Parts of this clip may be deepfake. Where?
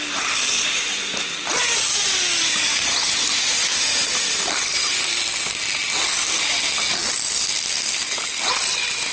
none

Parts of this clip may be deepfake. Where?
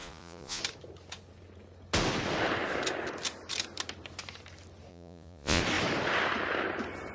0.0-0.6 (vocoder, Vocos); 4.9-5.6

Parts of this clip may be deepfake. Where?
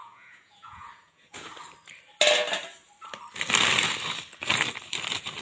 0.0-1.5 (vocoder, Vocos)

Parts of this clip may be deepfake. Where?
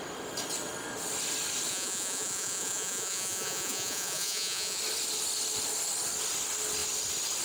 1.7-4.8 (vocoder, Vocos)